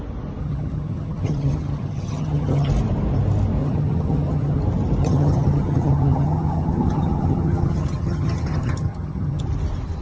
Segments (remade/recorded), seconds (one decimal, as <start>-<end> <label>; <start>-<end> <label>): 0.0-0.4 recorded; 0.4-2.7 remade; 2.7-3.6 recorded; 3.6-4.6 remade; 4.6-5.0 recorded; 5.0-9.4 remade; 9.4-10.0 recorded